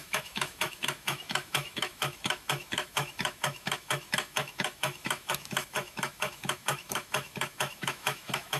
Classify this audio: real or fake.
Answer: fake